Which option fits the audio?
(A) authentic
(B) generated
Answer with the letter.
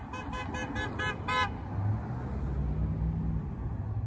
A